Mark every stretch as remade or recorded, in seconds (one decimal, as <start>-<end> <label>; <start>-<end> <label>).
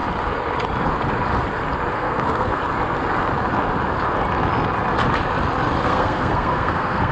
0.0-1.9 recorded; 1.9-2.6 remade; 2.6-5.8 recorded; 5.8-7.1 remade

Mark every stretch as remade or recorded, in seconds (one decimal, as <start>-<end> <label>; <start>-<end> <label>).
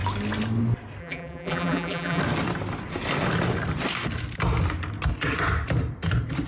0.0-1.0 recorded; 1.0-2.2 remade; 2.2-6.5 recorded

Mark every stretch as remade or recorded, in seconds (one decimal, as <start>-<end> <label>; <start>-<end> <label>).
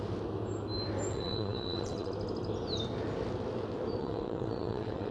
0.0-1.1 recorded; 1.1-2.1 remade; 2.1-4.0 recorded; 4.0-5.1 remade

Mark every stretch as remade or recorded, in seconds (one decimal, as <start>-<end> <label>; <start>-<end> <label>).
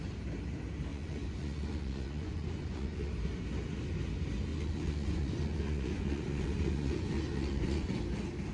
0.0-0.9 recorded; 0.9-3.1 remade; 3.1-4.5 recorded; 4.5-8.0 remade; 8.0-8.5 recorded